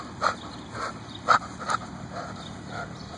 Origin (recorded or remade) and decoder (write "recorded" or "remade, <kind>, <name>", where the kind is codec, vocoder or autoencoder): remade, vocoder, BigVGAN v2